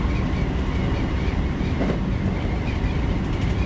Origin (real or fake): real